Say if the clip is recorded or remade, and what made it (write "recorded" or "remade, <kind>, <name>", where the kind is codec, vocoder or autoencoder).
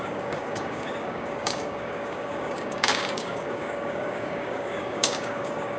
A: remade, codec, DAC